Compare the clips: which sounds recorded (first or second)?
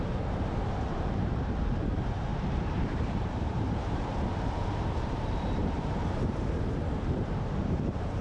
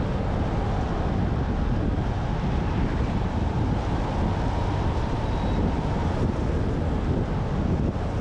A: second